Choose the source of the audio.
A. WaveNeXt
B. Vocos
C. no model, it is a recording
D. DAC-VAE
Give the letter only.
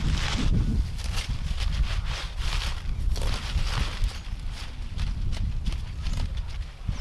C